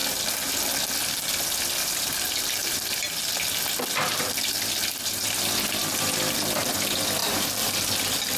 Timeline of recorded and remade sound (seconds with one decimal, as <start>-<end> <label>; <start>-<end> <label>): 0.0-2.6 recorded; 2.6-3.2 remade; 3.2-7.2 recorded; 7.2-7.9 remade; 7.9-8.4 recorded